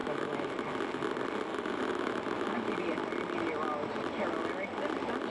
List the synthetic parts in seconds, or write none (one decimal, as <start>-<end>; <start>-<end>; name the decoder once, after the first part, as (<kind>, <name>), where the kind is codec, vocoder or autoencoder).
0.0-0.5 (autoencoder, DAC-VAE); 1.5-2.7